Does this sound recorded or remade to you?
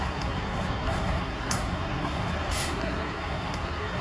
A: remade